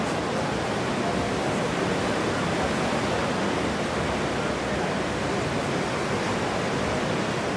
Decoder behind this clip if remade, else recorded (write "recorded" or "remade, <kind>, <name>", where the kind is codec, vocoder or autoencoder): recorded